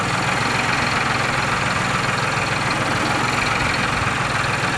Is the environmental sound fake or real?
real